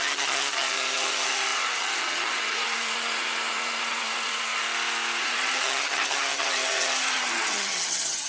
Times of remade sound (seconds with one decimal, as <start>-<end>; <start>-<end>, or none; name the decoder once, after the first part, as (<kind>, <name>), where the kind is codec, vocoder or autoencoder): 0.0-4.6 (vocoder, HiFi-GAN); 5.2-8.3